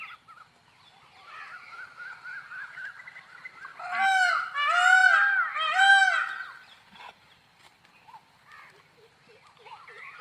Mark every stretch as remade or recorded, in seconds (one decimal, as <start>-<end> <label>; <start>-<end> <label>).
0.0-10.2 recorded